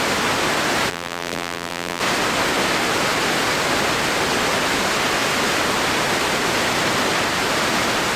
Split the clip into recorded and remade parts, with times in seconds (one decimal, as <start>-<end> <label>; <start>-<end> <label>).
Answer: 0.0-0.9 recorded; 0.9-2.0 remade; 2.0-8.2 recorded